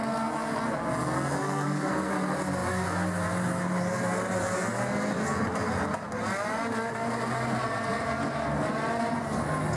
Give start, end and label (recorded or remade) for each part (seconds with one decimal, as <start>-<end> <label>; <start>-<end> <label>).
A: 0.0-1.4 recorded; 1.4-2.1 remade; 2.1-9.8 recorded